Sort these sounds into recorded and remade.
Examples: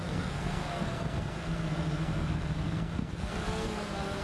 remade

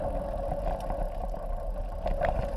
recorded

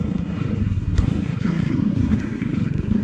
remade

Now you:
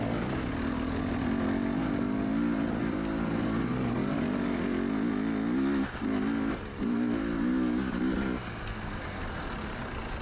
recorded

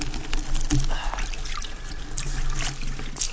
recorded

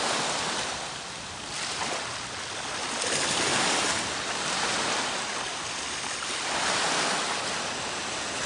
recorded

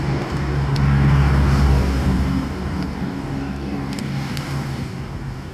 remade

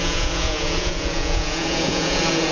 remade